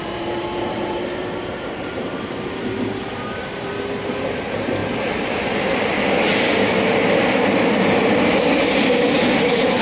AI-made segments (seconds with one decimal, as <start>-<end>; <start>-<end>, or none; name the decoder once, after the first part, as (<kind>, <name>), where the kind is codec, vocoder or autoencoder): 0.0-4.8 (vocoder, BigVGAN v2); 9.4-9.8